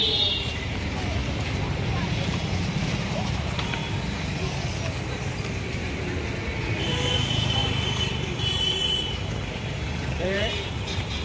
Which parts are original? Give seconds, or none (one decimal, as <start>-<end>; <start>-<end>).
3.8-5.5